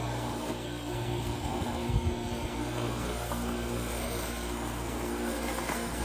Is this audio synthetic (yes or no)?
yes